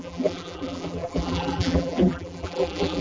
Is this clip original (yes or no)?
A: no